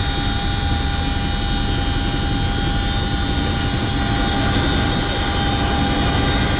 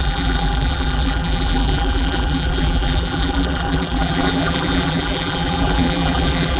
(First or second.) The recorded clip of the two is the first